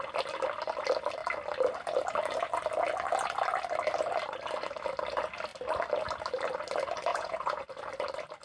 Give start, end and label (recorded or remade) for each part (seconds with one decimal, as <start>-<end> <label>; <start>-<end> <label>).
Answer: 0.0-7.1 recorded; 7.1-7.6 remade; 7.6-8.4 recorded